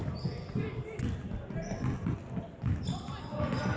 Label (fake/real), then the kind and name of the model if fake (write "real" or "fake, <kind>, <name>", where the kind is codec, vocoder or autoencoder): real